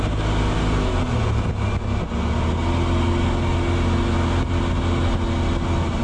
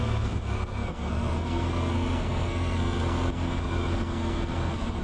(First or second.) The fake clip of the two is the second